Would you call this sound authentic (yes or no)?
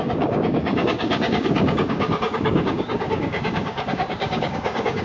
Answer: no